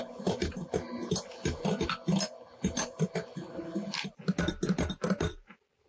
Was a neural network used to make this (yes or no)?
no